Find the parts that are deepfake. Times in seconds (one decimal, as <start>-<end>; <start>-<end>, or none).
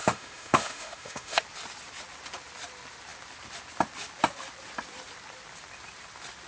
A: 0.0-1.4